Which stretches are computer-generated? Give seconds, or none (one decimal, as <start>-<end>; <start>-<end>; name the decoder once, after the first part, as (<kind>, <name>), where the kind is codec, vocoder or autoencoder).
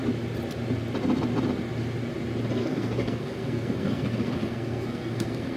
2.6-5.6 (codec, SNAC)